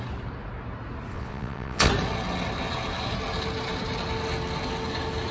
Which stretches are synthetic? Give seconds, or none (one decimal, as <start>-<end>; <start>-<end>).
1.1-1.9